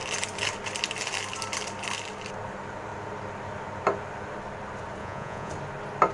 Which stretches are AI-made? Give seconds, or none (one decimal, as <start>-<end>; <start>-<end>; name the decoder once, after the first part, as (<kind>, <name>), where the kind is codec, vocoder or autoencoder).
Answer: 5.0-5.5 (vocoder, Vocos)